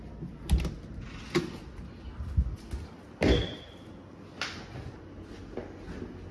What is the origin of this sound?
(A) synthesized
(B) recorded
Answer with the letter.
B